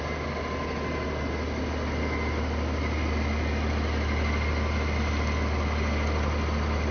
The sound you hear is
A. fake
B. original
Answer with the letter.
B